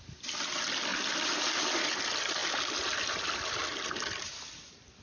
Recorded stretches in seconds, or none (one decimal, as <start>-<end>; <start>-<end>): 0.0-5.0